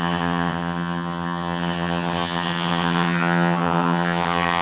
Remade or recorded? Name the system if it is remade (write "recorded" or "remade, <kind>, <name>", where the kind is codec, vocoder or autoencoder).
remade, vocoder, HiFi-GAN